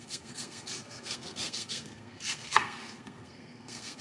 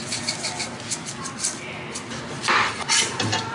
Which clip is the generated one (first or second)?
first